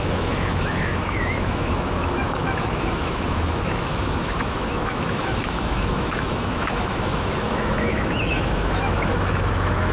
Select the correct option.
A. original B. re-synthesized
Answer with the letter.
B